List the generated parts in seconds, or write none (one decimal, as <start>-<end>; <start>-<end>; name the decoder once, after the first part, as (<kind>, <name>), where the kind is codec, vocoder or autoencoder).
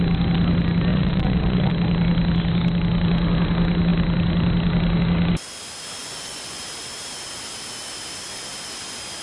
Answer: 0.9-1.7 (vocoder, Vocos); 6.0-6.6